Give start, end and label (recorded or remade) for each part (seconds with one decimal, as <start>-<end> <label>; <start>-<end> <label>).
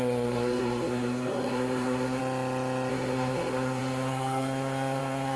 0.0-2.2 remade; 2.2-2.9 recorded; 2.9-5.4 remade